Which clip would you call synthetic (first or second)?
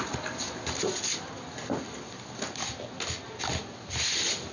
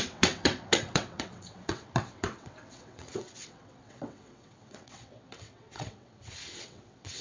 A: second